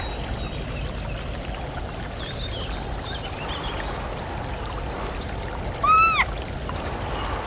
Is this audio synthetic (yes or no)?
no